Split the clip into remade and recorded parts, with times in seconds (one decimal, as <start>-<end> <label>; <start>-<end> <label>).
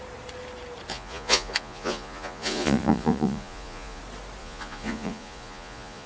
0.0-0.9 recorded; 0.9-4.0 remade; 4.0-4.4 recorded; 4.4-6.1 remade